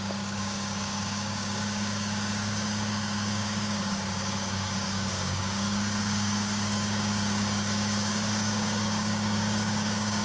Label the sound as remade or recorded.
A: remade